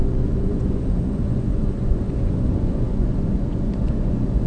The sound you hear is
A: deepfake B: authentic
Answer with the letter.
A